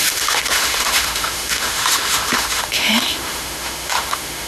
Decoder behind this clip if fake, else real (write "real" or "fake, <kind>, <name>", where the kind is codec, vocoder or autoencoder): fake, autoencoder, DAC-VAE